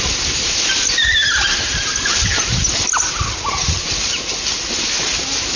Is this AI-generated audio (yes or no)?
no